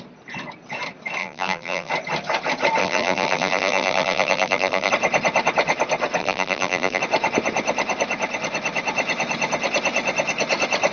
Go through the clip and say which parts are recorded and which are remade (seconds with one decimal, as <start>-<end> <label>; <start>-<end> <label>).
0.0-1.2 recorded; 1.2-1.9 remade; 1.9-2.8 recorded; 2.8-4.9 remade; 4.9-6.2 recorded; 6.2-7.0 remade; 7.0-10.9 recorded